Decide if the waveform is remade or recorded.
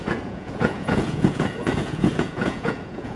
remade